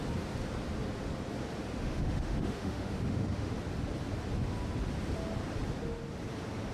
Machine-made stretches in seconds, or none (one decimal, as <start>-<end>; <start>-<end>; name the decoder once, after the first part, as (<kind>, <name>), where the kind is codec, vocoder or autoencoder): 1.7-3.5 (autoencoder, DAC-VAE)